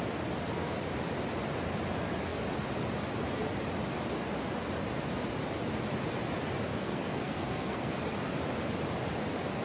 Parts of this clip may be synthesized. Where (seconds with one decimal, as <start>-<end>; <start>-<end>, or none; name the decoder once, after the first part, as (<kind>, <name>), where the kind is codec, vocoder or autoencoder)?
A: 6.7-8.0 (codec, SNAC)

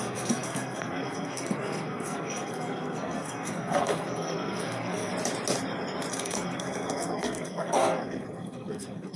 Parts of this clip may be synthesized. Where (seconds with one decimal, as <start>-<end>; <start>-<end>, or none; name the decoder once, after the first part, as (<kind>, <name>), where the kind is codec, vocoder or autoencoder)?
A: 0.0-5.1 (codec, SNAC); 6.1-9.2

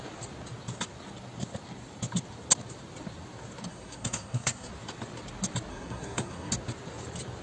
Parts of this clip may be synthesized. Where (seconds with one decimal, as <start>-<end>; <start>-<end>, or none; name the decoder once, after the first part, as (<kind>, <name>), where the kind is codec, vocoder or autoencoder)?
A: 3.7-4.7 (codec, SNAC); 5.7-6.5

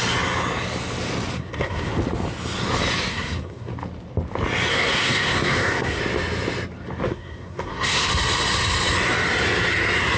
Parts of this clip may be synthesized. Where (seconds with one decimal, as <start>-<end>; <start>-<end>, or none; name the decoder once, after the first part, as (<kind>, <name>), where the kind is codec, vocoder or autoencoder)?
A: 1.3-1.9 (codec, SNAC); 3.1-3.7; 4.7-6.0; 7.1-8.1

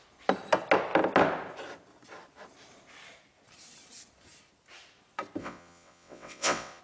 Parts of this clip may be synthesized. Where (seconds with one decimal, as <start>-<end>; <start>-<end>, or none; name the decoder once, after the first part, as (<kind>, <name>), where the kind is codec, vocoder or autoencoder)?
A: 5.4-6.8 (vocoder, WaveNeXt)

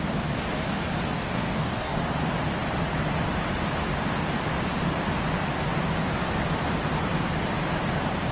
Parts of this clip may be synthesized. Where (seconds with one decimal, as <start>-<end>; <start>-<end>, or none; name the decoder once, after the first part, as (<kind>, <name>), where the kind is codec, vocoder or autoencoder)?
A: 1.1-2.0 (codec, DAC)

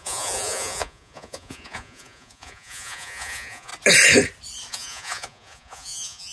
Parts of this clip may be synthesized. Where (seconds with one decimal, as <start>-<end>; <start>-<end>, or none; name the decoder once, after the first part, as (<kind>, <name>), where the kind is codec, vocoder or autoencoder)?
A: 0.0-3.7 (vocoder, Vocos); 4.7-6.3

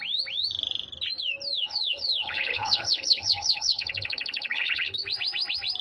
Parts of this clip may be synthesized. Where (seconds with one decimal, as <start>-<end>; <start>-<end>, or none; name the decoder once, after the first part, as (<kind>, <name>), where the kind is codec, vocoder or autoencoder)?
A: 1.6-5.1 (codec, HILCodec)